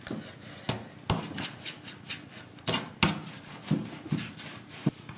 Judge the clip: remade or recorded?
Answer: recorded